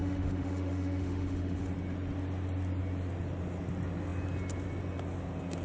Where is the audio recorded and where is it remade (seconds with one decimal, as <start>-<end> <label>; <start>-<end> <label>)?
0.0-1.7 remade; 1.7-5.6 recorded